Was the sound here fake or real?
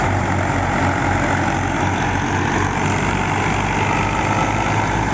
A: real